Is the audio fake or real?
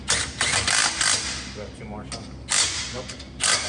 real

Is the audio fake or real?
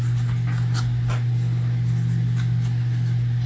real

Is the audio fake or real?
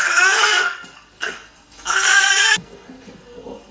fake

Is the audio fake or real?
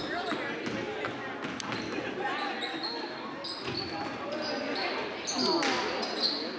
real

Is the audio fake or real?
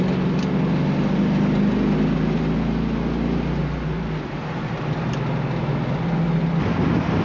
real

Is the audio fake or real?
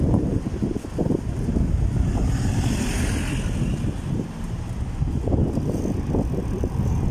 real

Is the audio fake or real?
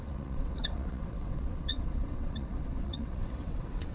fake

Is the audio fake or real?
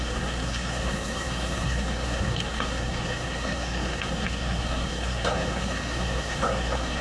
fake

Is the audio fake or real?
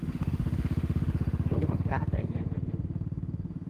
fake